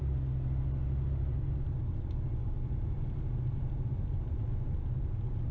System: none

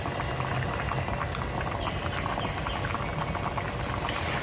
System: none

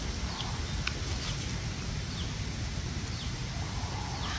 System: none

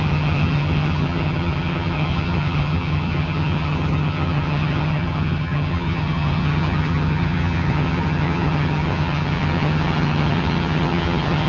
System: vocoder, HiFi-GAN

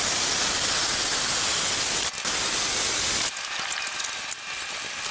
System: none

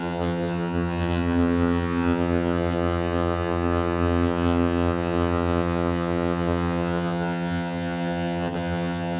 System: vocoder, HiFi-GAN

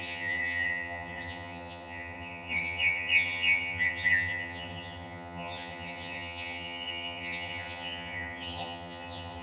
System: vocoder, HiFi-GAN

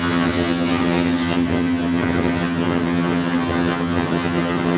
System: vocoder, HiFi-GAN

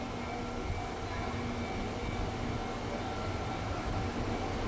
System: none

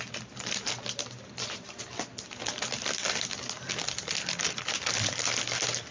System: none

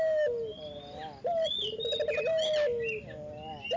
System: none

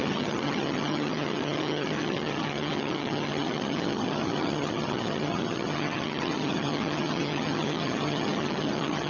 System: vocoder, HiFi-GAN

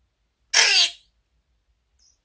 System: none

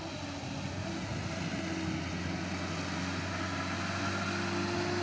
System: none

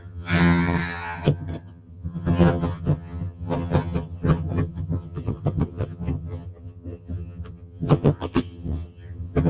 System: vocoder, HiFi-GAN